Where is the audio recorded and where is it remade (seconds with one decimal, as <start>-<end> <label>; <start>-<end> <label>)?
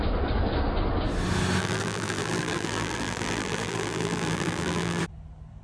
0.0-1.6 recorded; 1.6-5.0 remade; 5.0-5.6 recorded